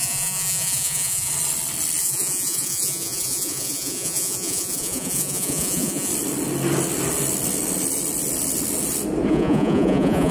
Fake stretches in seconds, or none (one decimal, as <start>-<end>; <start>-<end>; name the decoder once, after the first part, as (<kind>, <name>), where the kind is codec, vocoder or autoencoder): 0.0-1.3 (vocoder, Vocos); 2.0-6.1; 9.3-10.3